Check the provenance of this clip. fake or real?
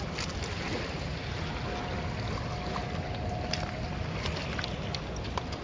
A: real